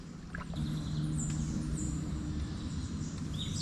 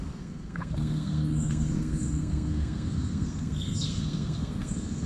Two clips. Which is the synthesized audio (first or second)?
second